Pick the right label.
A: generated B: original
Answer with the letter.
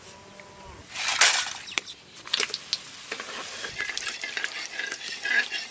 B